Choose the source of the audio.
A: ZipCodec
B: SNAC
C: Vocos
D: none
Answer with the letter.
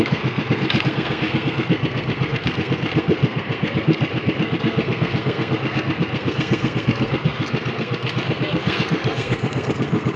B